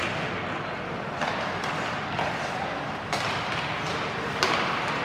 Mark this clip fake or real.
real